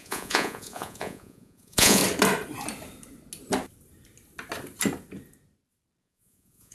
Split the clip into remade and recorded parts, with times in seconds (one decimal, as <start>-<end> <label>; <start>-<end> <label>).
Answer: 0.0-2.0 remade; 2.0-6.0 recorded; 6.0-6.7 remade